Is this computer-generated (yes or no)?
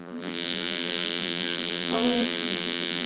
yes